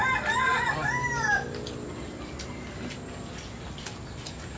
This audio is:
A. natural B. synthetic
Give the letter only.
A